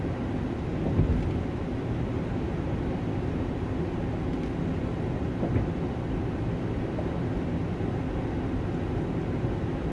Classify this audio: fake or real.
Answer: real